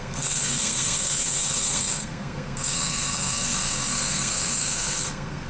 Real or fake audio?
fake